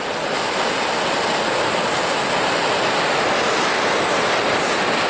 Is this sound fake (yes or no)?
no